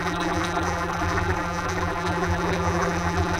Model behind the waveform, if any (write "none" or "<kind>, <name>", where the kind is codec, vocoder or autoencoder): vocoder, BigVGAN v2